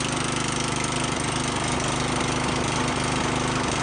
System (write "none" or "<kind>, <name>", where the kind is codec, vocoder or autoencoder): none